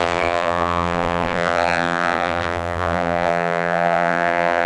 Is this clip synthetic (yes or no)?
yes